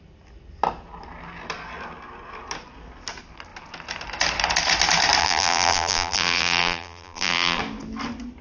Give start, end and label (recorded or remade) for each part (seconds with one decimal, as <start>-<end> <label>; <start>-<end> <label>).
0.0-5.2 recorded; 5.2-7.6 remade; 7.6-8.4 recorded